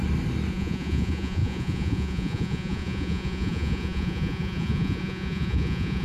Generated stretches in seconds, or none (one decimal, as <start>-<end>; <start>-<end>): 0.5-6.0